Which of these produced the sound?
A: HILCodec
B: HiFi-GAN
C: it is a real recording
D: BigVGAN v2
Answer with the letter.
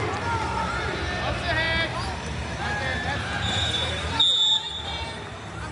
C